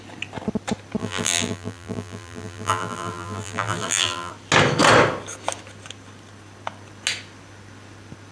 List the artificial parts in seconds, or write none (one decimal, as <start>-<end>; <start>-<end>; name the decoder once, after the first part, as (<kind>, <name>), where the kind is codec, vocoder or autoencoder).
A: 1.0-4.3 (vocoder, BigVGAN v2)